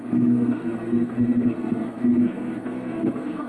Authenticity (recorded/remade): remade